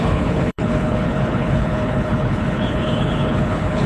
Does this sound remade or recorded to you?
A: remade